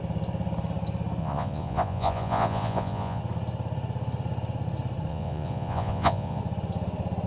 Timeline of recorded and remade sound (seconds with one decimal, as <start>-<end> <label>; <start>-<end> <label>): 0.0-1.2 recorded; 1.2-3.2 remade; 3.2-5.1 recorded; 5.1-6.4 remade; 6.4-7.3 recorded